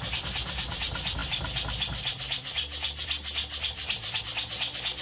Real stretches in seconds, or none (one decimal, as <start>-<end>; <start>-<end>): none